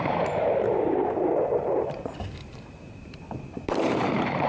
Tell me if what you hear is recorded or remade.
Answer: remade